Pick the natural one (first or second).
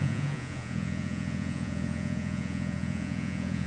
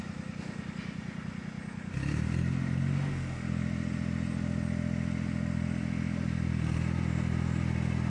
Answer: second